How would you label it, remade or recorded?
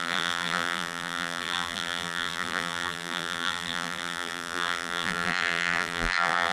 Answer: remade